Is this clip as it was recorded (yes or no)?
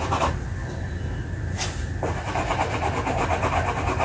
yes